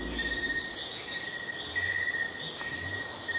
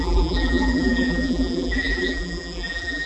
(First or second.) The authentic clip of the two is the first